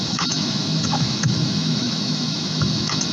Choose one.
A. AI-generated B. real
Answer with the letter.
A